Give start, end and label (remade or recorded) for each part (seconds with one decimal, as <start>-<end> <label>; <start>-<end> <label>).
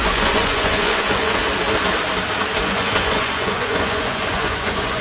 0.0-1.4 remade; 1.4-2.6 recorded; 2.6-5.0 remade